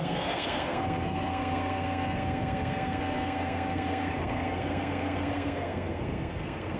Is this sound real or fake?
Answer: fake